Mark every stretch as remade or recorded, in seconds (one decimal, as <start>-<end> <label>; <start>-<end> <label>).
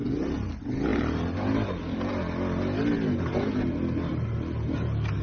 0.0-5.2 recorded